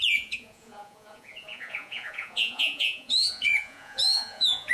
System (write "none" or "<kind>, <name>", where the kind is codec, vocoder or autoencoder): vocoder, Vocos